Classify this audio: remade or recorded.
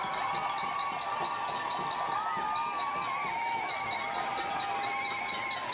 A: recorded